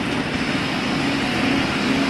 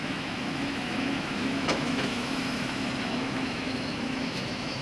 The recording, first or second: first